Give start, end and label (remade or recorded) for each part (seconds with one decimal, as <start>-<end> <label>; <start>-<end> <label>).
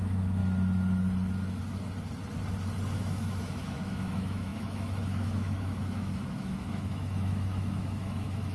0.0-0.4 remade; 0.4-2.9 recorded; 2.9-8.5 remade